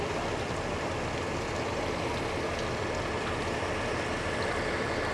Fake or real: real